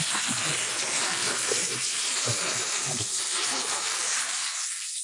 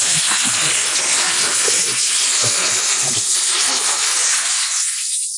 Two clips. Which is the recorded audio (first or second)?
second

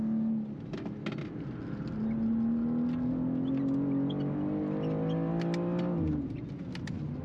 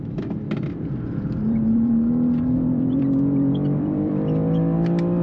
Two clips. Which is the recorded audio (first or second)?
first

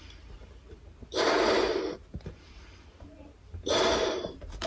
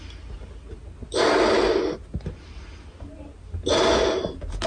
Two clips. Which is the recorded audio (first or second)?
second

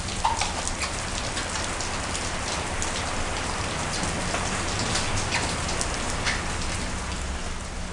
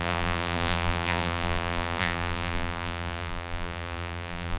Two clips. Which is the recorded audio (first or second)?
first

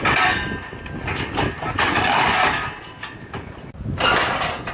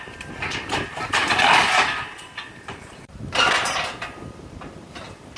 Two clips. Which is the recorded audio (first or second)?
first